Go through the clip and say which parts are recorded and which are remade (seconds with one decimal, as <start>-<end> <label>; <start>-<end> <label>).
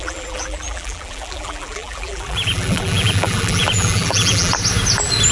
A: 0.0-4.5 remade; 4.5-5.3 recorded